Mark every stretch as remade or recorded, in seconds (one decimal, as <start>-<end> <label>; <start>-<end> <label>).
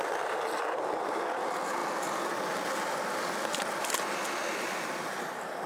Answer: 0.0-5.7 recorded